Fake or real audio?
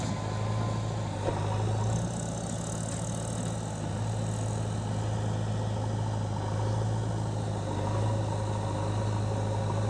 real